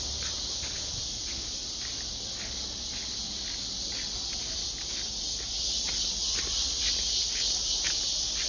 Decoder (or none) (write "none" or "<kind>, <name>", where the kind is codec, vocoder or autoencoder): none